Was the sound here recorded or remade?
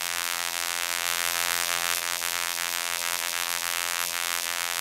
remade